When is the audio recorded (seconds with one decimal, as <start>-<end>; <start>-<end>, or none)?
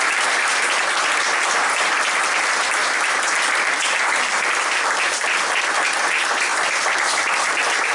0.0-6.5